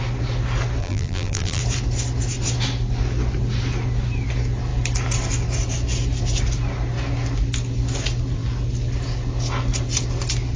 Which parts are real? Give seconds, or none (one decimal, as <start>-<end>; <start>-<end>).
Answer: 0.0-0.8; 1.6-10.6